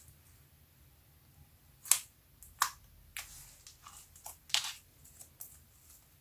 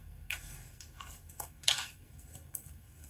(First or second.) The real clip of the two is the first